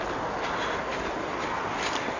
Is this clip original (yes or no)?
yes